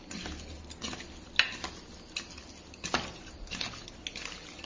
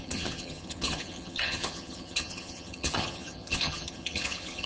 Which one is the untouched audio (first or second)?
first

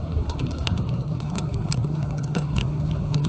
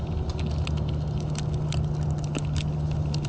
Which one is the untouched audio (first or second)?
second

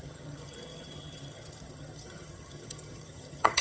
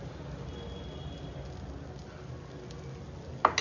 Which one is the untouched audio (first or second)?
second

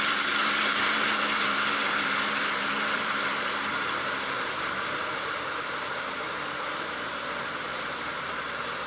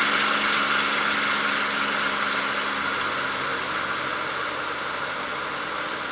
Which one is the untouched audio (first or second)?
second